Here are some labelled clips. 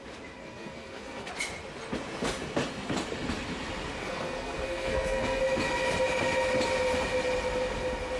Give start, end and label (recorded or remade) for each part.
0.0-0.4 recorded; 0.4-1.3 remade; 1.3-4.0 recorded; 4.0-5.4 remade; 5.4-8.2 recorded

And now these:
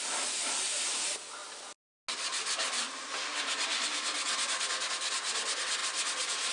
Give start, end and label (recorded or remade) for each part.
0.0-6.5 recorded

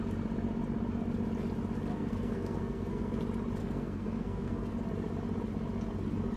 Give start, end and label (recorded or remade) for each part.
0.0-1.9 recorded; 1.9-3.2 remade; 3.2-3.6 recorded; 3.6-4.7 remade; 4.7-6.4 recorded